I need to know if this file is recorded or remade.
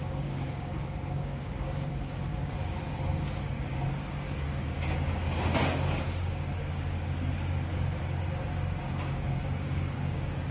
remade